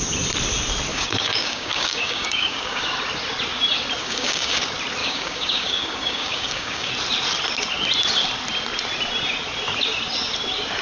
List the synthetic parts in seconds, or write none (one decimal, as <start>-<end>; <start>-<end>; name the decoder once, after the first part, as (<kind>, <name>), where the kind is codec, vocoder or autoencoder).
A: 0.9-2.8 (codec, DAC); 4.0-4.6; 5.0-6.9